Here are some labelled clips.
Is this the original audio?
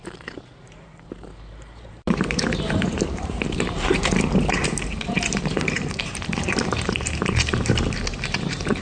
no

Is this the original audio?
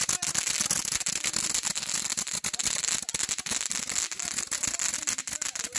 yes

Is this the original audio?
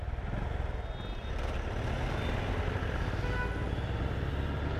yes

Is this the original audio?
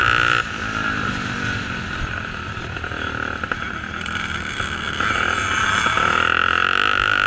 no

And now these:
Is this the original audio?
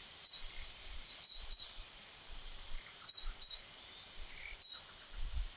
no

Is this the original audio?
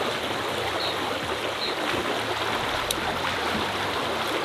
yes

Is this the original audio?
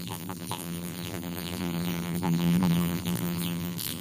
no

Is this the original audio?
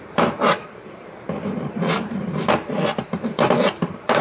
no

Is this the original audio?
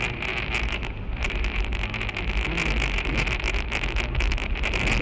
yes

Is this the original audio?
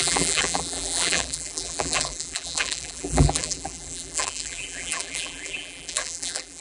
no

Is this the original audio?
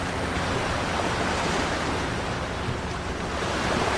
no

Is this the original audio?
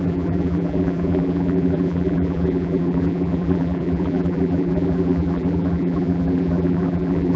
no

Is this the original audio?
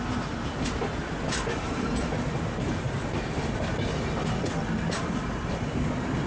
yes